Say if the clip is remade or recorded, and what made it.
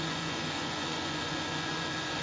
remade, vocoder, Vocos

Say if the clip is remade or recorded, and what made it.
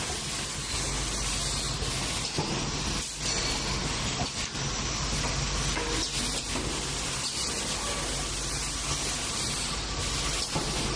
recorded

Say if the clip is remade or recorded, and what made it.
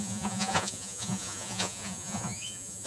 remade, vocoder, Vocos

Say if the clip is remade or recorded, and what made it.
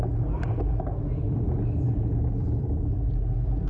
remade, vocoder, BigVGAN v2